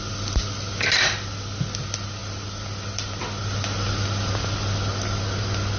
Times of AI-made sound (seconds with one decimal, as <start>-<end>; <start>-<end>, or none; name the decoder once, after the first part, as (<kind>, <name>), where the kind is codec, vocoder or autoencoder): none